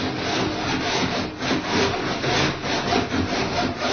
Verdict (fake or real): real